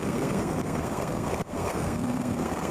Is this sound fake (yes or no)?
yes